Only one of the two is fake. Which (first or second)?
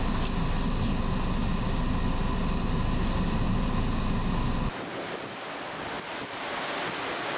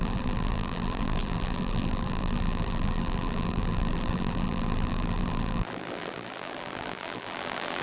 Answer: second